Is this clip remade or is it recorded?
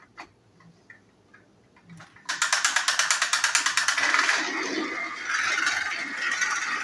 recorded